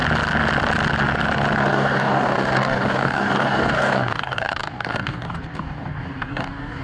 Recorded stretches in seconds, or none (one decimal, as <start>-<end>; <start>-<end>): 0.0-1.7